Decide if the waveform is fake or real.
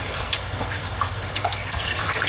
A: fake